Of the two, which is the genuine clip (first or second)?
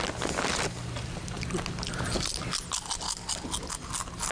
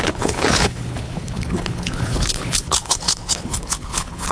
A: first